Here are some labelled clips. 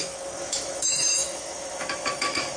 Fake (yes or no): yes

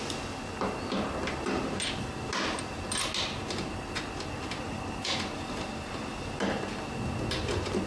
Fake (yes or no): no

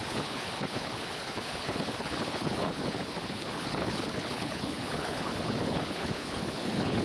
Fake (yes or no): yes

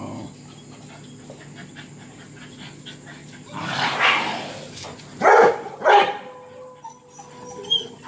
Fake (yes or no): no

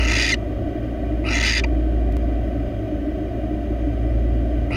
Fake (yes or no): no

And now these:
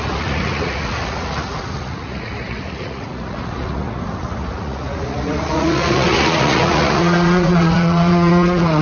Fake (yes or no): yes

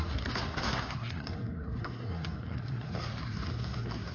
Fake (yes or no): yes